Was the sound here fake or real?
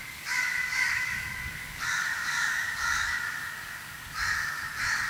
fake